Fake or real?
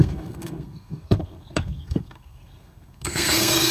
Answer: fake